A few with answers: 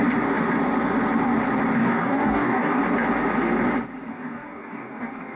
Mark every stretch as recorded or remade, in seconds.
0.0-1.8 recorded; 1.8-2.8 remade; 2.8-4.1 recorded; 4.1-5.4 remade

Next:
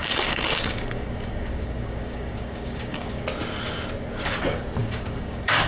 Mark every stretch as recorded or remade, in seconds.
0.0-3.2 remade; 3.2-4.8 recorded; 4.8-5.7 remade

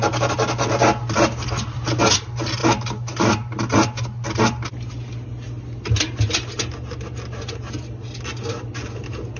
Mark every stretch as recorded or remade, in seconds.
0.0-9.4 recorded